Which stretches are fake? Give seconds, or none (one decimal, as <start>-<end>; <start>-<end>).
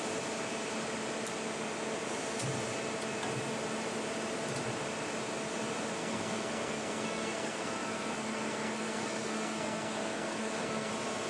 6.0-10.9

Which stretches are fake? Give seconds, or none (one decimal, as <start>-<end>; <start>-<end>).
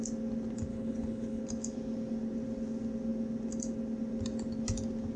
0.7-1.4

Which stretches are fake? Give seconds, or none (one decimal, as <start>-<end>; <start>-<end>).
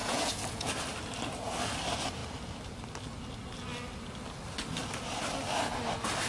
0.0-0.7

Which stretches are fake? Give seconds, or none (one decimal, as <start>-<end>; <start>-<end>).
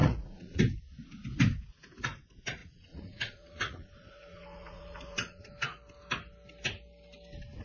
0.0-0.6; 2.6-5.5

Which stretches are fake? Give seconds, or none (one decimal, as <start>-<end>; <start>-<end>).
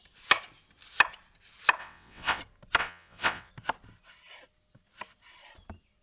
1.8-2.4; 2.8-3.5